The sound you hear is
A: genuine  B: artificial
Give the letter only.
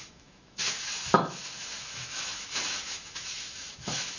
B